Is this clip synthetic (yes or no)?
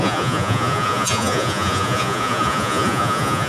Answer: yes